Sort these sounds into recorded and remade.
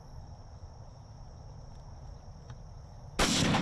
recorded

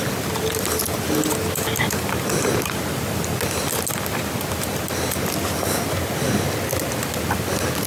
recorded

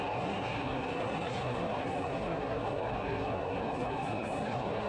remade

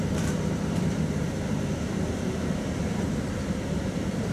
remade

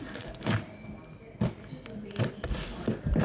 recorded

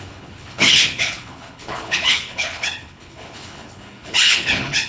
remade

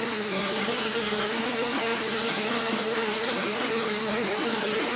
remade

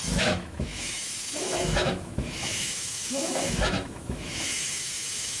remade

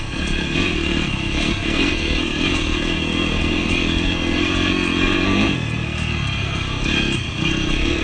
remade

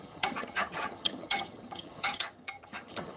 remade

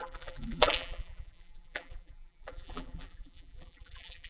remade